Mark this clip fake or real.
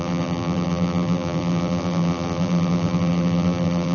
fake